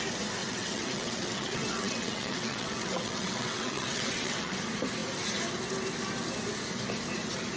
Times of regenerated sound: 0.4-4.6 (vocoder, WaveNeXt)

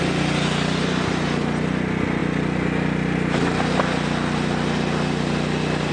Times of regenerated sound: none

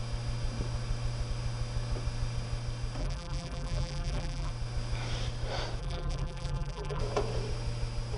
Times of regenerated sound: 3.0-4.5 (vocoder, BigVGAN v2); 5.8-7.0

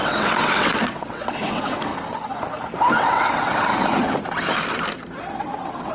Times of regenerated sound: 0.0-1.9 (vocoder, WaveNeXt); 3.0-3.7; 5.2-5.9

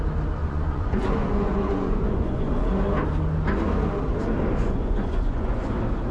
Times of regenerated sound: 0.4-2.6 (vocoder, Vocos); 4.6-5.6

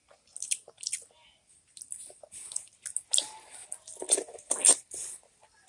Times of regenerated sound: none

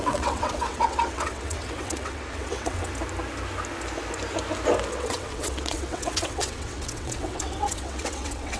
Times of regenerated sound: 0.0-2.9 (vocoder, WaveNeXt); 4.9-8.6

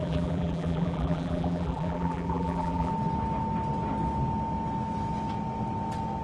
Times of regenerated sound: 0.0-2.9 (vocoder, BigVGAN v2)